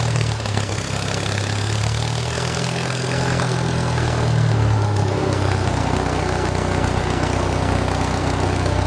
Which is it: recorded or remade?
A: remade